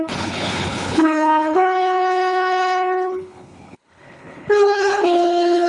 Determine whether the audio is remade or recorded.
remade